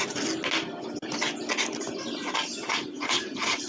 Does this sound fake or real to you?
real